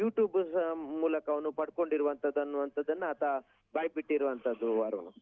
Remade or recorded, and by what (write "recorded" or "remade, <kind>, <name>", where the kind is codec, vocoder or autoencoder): recorded